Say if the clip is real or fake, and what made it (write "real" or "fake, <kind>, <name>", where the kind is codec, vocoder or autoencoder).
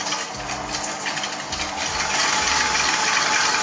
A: real